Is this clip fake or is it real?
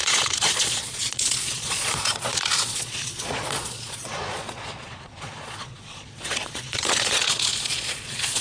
fake